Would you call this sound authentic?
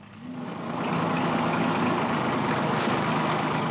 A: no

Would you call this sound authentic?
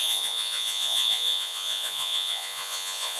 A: no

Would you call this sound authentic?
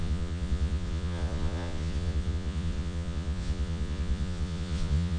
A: no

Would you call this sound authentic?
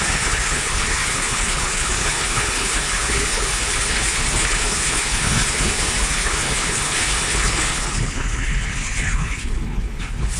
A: no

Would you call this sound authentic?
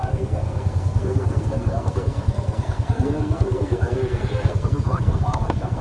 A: no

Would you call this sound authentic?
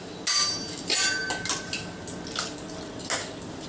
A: yes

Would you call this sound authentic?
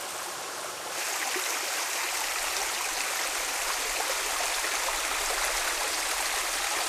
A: yes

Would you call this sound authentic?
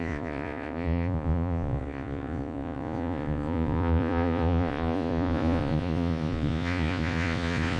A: no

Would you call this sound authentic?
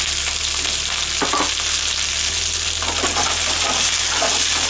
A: yes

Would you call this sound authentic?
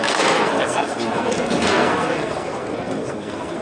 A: no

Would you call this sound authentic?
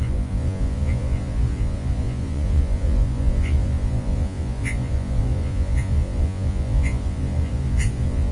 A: no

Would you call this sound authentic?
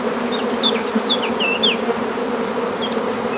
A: yes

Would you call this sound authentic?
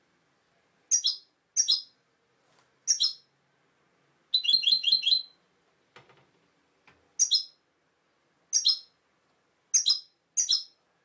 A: yes